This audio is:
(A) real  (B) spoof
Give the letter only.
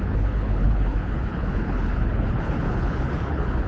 B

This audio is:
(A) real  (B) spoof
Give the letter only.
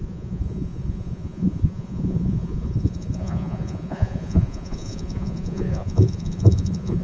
B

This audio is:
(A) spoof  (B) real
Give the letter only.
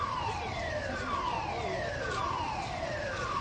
B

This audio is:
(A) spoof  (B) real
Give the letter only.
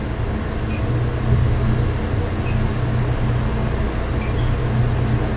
B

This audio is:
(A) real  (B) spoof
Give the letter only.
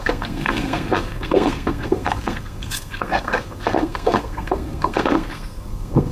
B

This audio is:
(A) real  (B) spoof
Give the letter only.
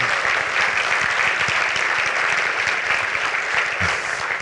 A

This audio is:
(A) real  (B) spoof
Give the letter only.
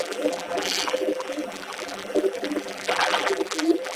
B